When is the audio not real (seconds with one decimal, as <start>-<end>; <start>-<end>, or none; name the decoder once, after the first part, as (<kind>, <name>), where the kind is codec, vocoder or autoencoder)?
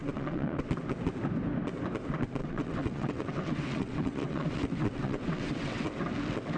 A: 0.0-0.7 (vocoder, WaveNeXt); 2.4-5.9